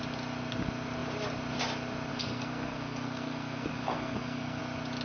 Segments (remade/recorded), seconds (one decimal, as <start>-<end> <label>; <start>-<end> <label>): 0.0-2.1 recorded; 2.1-4.6 remade; 4.6-5.0 recorded